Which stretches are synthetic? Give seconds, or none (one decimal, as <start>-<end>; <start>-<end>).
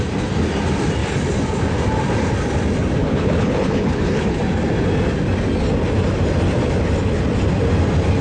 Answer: 3.0-4.4